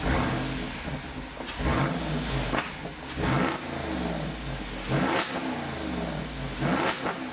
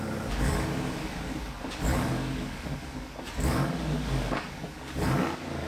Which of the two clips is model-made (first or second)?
second